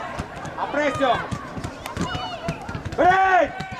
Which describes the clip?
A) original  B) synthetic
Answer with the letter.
A